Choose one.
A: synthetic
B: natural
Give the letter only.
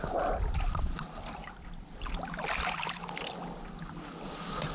B